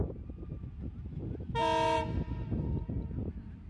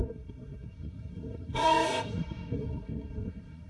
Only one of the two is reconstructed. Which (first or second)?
second